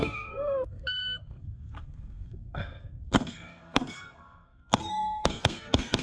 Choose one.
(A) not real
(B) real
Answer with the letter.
A